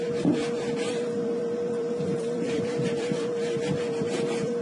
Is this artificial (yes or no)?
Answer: yes